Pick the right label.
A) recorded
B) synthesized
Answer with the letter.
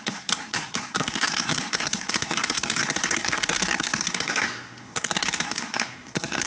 B